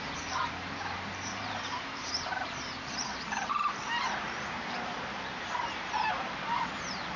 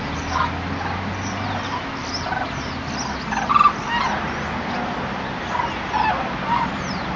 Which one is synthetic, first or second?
first